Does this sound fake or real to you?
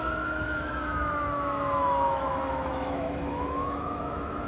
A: fake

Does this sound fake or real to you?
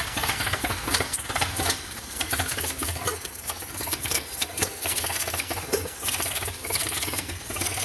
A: fake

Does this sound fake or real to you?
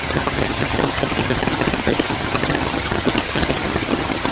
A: fake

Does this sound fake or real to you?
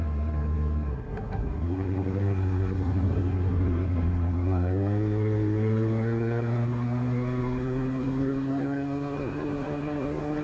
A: fake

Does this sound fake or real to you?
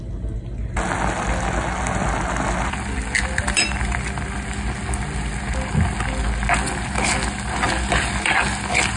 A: real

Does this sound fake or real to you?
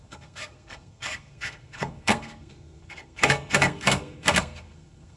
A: fake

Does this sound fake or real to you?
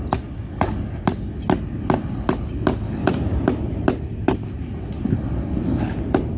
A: real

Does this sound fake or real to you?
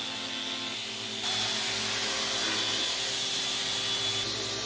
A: real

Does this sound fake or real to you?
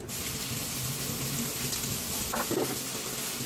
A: real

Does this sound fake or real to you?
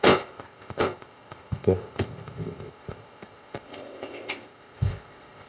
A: fake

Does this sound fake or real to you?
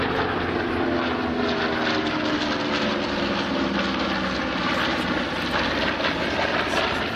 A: real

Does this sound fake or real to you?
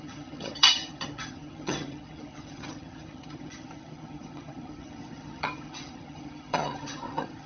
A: fake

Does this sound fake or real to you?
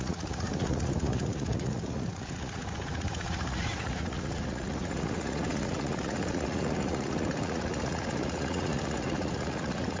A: fake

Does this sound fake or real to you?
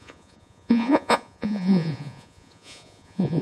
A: fake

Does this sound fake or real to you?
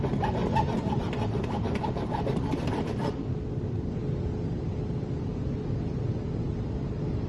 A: real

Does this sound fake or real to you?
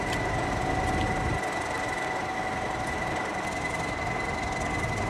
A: real